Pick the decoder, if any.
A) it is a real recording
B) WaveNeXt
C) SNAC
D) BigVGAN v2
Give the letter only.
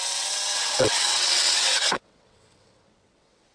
B